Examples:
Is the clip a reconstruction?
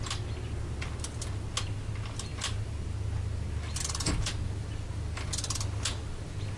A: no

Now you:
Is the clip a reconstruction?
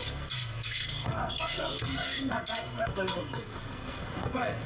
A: yes